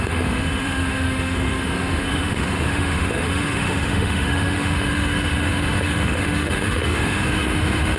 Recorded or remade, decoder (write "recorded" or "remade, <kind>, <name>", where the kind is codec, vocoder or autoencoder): remade, autoencoder, DAC-VAE